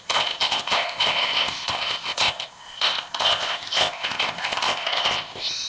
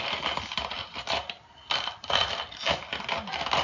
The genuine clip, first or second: second